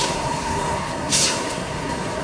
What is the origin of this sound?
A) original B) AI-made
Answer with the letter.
B